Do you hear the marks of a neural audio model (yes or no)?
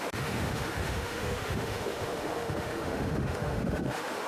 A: yes